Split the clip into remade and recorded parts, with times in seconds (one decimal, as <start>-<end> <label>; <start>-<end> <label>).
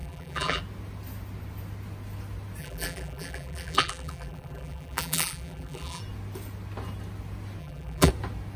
0.0-0.6 remade; 0.6-2.6 recorded; 2.6-6.0 remade; 6.0-7.6 recorded; 7.6-8.1 remade; 8.1-8.6 recorded